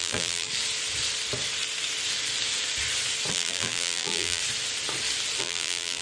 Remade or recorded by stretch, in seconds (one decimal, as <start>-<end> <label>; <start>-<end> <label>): 0.0-0.5 remade; 0.5-3.3 recorded; 3.3-4.4 remade; 4.4-5.4 recorded; 5.4-6.0 remade